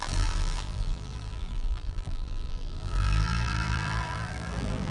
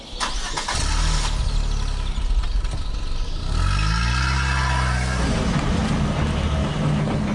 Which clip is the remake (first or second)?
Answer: first